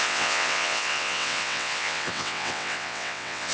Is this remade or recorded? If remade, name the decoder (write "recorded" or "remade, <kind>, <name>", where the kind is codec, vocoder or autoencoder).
remade, vocoder, WaveNeXt